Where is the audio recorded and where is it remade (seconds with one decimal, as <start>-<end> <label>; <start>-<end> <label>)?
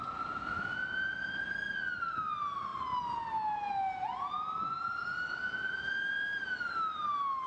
0.0-7.5 recorded